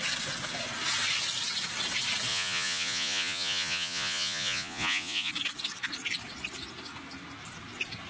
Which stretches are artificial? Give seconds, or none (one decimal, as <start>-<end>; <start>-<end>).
2.3-5.3